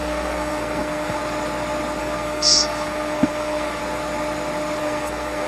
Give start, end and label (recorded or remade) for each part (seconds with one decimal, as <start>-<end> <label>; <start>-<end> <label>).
0.0-1.2 remade; 1.2-2.0 recorded; 2.0-3.8 remade; 3.8-4.8 recorded; 4.8-5.5 remade